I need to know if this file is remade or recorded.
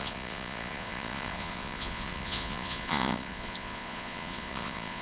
remade